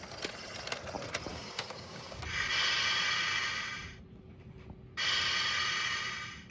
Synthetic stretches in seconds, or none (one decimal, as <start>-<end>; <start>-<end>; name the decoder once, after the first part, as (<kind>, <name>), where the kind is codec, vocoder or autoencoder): 1.3-2.2 (codec, DAC)